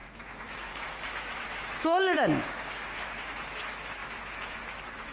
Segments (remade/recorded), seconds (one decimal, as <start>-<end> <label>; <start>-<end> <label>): 0.0-5.1 remade